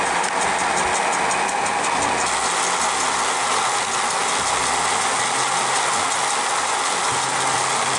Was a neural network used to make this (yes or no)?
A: no